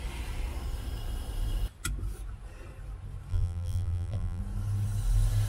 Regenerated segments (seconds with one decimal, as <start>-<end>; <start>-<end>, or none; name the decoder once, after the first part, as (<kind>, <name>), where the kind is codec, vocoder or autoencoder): 3.3-4.4 (vocoder, BigVGAN v2)